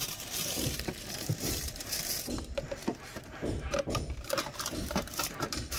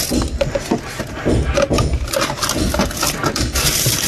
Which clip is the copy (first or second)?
first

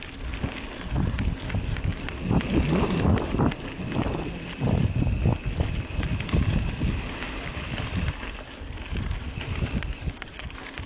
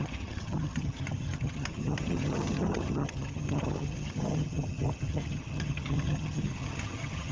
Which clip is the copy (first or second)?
second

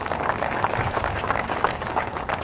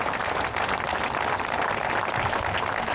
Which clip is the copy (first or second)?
first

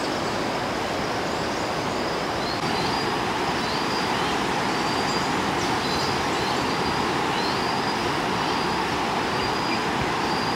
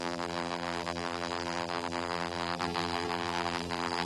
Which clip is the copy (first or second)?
second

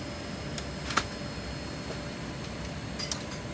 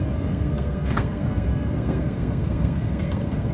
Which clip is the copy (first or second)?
second